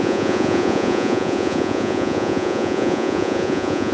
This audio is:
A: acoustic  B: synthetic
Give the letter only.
B